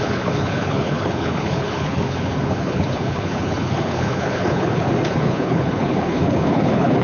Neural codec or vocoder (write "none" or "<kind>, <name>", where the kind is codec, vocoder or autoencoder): codec, HILCodec